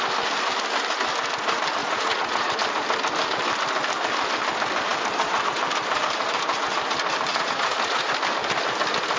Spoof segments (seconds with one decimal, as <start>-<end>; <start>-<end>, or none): 1.8-2.5; 7.3-8.1

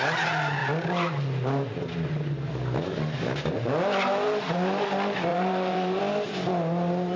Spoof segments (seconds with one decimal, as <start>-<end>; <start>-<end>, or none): 5.3-6.0

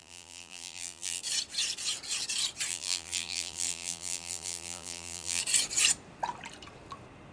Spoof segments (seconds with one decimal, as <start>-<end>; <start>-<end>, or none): 0.0-1.2; 2.7-5.4

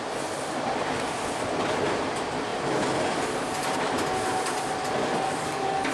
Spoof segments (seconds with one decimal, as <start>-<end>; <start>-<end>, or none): 5.0-5.9